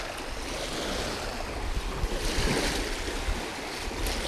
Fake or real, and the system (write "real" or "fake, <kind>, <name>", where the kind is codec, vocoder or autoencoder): real